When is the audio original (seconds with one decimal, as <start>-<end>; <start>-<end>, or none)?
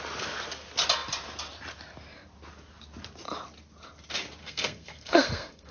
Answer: 0.0-4.4